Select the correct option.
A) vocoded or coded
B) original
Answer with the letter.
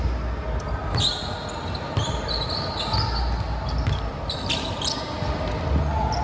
B